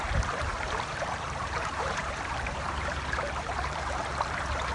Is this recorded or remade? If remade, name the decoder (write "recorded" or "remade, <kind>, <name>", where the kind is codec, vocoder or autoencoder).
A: remade, vocoder, BigVGAN v2